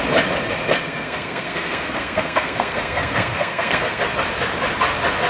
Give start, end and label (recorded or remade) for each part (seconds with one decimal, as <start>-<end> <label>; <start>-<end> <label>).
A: 0.0-0.8 recorded; 0.8-4.0 remade; 4.0-5.3 recorded